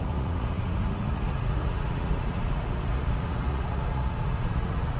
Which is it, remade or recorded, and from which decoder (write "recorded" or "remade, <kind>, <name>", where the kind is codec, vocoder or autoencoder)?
remade, vocoder, Vocos